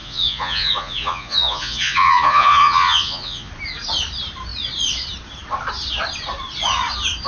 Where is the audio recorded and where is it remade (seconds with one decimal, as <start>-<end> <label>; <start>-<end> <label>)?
0.0-3.5 remade; 3.5-7.3 recorded